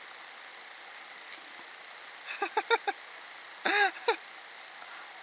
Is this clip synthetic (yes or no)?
no